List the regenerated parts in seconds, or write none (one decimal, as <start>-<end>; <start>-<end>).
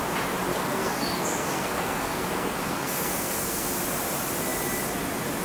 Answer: 0.5-3.7